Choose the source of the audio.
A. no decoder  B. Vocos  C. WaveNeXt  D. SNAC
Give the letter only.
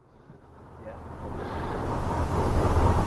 A